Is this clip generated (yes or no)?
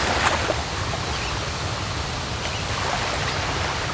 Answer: no